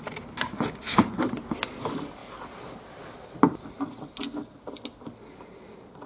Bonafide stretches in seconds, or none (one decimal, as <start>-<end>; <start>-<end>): 0.0-6.1